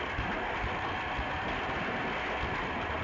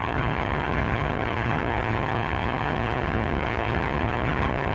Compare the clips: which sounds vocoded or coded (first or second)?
second